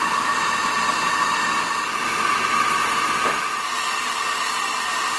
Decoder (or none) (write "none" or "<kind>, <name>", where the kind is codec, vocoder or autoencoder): none